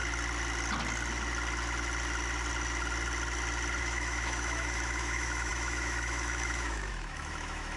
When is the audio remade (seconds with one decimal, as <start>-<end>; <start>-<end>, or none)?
3.8-7.8

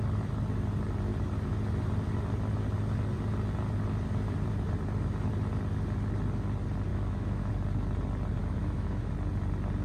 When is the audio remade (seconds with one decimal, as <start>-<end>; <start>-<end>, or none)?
6.9-7.5; 8.4-9.1

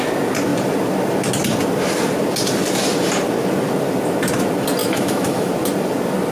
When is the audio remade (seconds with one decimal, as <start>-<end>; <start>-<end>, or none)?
4.8-5.5

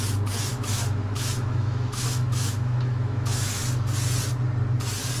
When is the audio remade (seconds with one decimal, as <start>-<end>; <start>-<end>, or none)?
0.5-3.6

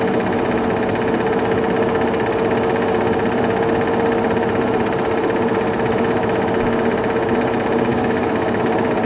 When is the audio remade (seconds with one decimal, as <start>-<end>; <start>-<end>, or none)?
7.9-8.6